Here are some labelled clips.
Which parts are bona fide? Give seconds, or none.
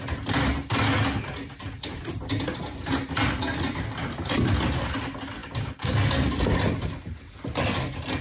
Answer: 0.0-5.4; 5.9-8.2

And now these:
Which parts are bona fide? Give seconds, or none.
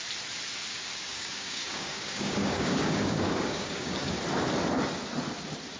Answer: 0.0-0.7; 4.2-5.8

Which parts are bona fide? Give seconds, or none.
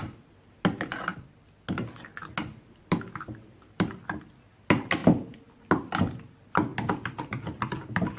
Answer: 0.0-8.2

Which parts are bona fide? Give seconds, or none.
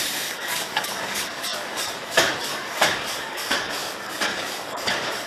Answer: none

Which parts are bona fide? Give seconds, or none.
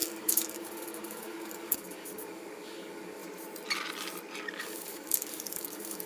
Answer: 3.2-4.6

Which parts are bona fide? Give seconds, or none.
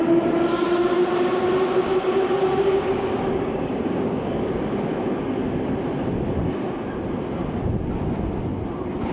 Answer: 0.0-2.4; 4.6-9.1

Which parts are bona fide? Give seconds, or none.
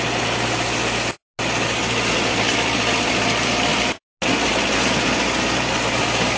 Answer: 0.0-6.4